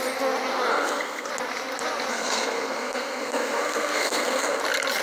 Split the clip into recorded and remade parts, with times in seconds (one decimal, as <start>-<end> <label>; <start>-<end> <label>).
0.0-0.7 recorded; 0.7-1.3 remade; 1.3-2.1 recorded; 2.1-4.6 remade; 4.6-5.0 recorded